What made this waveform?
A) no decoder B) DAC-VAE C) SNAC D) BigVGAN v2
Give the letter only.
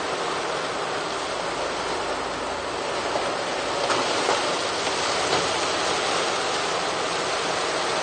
A